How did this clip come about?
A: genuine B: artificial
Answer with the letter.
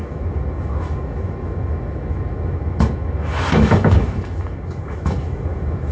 B